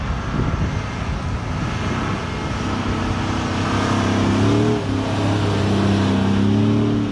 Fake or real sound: real